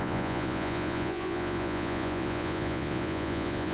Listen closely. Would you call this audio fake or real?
fake